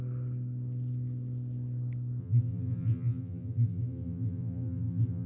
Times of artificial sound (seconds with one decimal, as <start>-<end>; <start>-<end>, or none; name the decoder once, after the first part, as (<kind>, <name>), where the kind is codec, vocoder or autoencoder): 2.2-5.3 (vocoder, BigVGAN v2)